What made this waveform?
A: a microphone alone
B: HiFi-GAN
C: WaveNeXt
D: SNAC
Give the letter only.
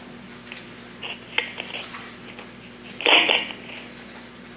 A